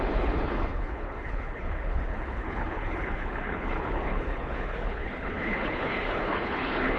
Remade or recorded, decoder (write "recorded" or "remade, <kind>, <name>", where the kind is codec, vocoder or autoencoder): remade, codec, HILCodec